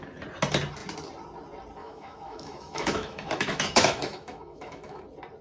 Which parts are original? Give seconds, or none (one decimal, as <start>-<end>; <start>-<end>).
0.0-1.8; 5.0-5.4